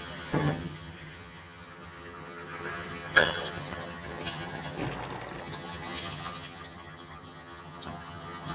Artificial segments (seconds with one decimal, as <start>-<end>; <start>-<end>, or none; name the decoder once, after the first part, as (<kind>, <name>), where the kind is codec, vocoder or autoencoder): 0.0-4.8 (vocoder, HiFi-GAN); 5.4-8.5